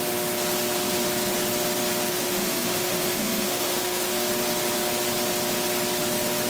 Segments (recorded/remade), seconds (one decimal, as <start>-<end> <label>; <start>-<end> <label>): 0.0-2.1 recorded; 2.1-4.1 remade; 4.1-6.5 recorded